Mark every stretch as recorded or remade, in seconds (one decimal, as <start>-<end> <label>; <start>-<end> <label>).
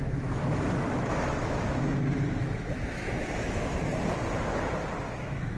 0.0-3.9 remade; 3.9-5.0 recorded; 5.0-5.6 remade